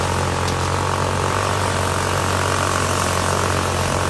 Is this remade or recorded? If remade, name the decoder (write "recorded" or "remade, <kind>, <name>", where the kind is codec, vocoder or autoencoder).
recorded